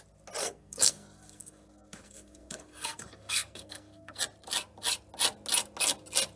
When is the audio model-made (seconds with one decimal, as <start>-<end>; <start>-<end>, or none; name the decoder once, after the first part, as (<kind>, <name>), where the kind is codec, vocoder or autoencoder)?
0.4-4.2 (codec, SNAC)